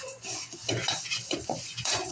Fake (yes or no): yes